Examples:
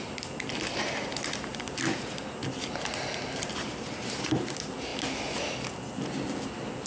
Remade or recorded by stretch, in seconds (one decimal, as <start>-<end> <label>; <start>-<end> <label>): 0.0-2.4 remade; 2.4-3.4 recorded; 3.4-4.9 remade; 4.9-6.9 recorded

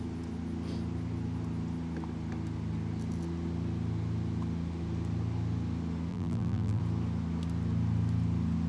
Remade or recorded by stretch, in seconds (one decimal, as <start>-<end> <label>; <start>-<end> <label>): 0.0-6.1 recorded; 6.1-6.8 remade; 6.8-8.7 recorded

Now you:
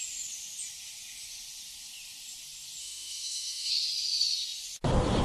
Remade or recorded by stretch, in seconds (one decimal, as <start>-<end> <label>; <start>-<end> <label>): 0.0-2.8 recorded; 2.8-3.7 remade; 3.7-5.2 recorded

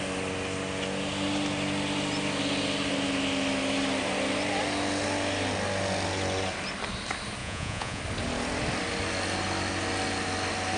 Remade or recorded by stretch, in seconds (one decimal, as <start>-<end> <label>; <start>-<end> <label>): 0.0-7.4 recorded; 7.4-8.0 remade; 8.0-10.8 recorded

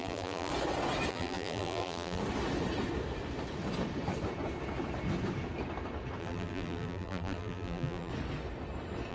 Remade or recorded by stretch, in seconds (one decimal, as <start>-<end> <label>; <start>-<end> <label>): 0.0-0.5 remade; 0.5-1.1 recorded; 1.1-2.2 remade; 2.2-6.2 recorded; 6.2-8.1 remade; 8.1-9.1 recorded